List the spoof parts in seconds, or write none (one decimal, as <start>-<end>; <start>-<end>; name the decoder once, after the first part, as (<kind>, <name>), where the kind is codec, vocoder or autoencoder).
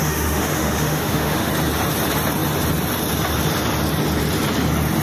0.0-1.5 (autoencoder, DAC-VAE)